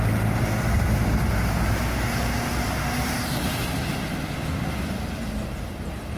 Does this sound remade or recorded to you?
recorded